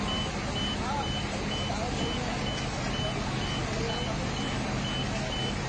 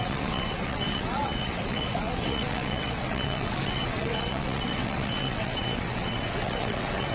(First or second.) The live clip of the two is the first